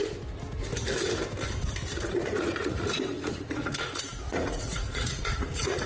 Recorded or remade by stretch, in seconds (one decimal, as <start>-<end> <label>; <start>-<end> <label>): 0.0-1.8 recorded; 1.8-5.9 remade